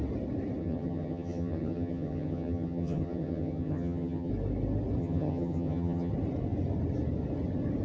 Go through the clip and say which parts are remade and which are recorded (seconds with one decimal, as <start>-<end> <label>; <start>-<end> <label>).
0.0-0.6 recorded; 0.6-4.3 remade; 4.3-5.0 recorded; 5.0-6.1 remade; 6.1-7.8 recorded